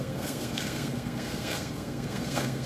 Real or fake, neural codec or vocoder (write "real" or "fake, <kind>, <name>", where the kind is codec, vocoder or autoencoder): fake, codec, SNAC